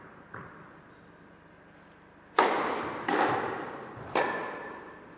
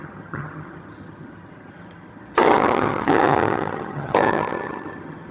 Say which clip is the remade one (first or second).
second